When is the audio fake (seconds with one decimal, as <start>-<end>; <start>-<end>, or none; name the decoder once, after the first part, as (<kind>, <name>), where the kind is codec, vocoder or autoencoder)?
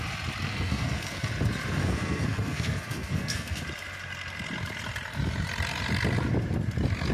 0.5-1.3 (codec, SNAC); 1.8-3.6